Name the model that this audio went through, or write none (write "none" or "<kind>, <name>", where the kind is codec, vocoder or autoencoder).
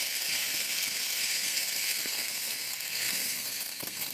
codec, SNAC